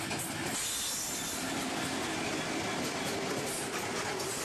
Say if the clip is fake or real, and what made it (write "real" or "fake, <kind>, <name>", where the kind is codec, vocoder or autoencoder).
real